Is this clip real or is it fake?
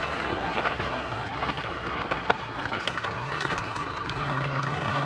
fake